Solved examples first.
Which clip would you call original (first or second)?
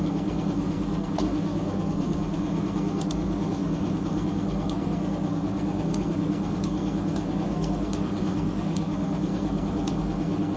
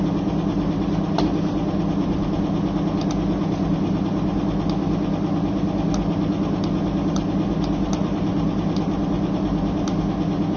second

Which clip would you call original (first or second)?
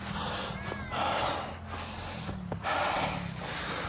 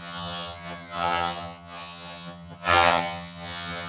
first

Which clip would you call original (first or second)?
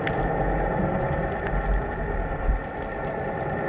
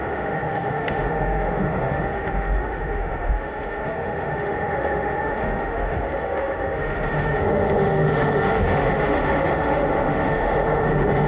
first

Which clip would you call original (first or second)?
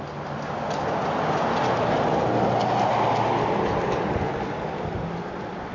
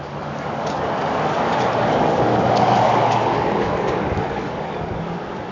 first